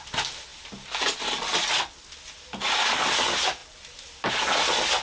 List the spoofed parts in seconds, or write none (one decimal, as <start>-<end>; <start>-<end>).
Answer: none